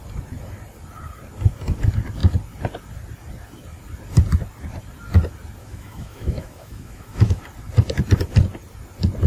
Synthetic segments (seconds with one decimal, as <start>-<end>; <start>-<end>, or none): 5.6-7.4